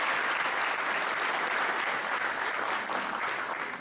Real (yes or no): yes